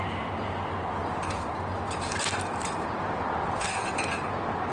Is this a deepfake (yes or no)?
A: no